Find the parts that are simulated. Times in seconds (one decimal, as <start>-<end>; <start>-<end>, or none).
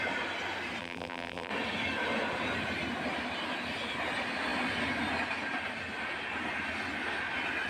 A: 0.8-1.5